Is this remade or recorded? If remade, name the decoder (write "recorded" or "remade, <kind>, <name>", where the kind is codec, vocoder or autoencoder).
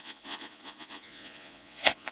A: remade, vocoder, Vocos